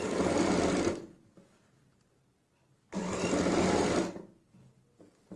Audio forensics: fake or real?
real